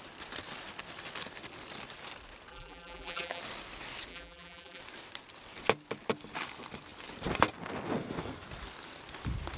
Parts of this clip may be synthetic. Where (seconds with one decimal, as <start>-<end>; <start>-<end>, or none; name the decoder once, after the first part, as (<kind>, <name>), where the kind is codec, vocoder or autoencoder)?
2.5-3.4 (vocoder, BigVGAN v2); 4.1-4.8

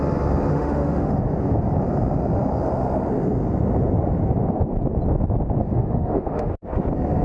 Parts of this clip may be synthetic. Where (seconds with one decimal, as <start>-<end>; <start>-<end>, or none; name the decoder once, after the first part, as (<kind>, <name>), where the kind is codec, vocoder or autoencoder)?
0.5-1.2 (autoencoder, DAC-VAE); 5.6-6.5